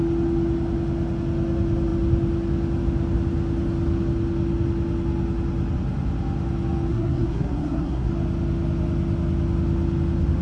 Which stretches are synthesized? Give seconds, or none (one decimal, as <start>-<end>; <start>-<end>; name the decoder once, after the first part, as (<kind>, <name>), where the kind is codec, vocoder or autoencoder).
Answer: 6.9-8.1 (codec, SNAC)